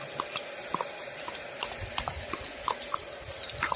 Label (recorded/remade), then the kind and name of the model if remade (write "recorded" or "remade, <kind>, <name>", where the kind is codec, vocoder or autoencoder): recorded